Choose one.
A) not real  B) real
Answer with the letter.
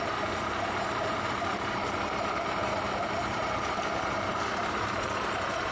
A